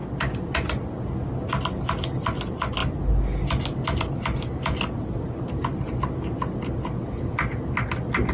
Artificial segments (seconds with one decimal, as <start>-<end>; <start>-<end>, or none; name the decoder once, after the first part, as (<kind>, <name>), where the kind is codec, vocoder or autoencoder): none